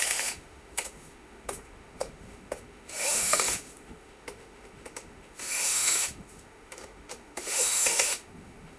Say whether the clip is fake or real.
fake